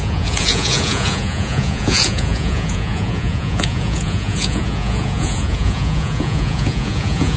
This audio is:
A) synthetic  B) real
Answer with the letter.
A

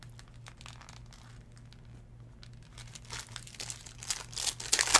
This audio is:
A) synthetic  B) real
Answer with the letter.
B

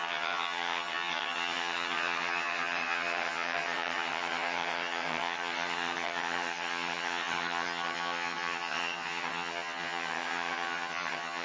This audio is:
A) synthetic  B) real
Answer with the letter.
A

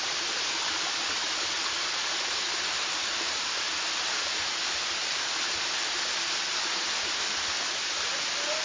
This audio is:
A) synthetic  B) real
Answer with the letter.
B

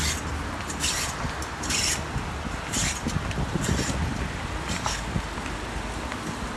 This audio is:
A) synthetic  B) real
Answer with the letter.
B